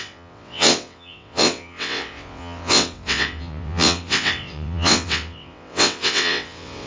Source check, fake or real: fake